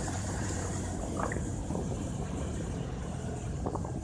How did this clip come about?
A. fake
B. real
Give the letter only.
A